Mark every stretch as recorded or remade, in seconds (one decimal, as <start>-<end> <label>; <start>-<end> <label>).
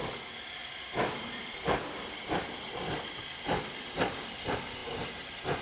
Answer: 0.0-0.6 recorded; 0.6-2.8 remade; 2.8-5.6 recorded